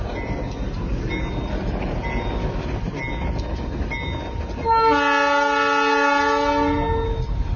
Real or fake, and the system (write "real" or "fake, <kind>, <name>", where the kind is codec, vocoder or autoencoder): real